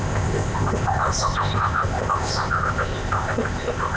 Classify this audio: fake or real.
fake